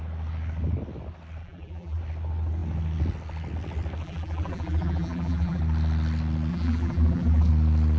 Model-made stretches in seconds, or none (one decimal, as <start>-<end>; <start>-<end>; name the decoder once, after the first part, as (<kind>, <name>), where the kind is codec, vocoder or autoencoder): 1.4-2.0 (vocoder, BigVGAN v2); 4.0-5.6; 6.5-7.5